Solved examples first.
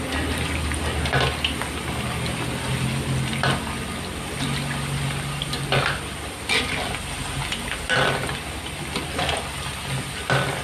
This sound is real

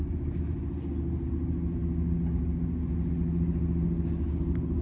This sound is real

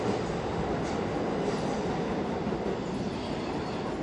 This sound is real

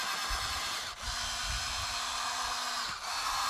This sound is real